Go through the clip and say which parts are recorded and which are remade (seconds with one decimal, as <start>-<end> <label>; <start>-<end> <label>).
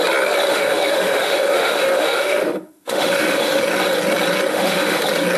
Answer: 0.0-0.5 recorded; 0.5-3.6 remade; 3.6-4.5 recorded; 4.5-5.0 remade; 5.0-5.4 recorded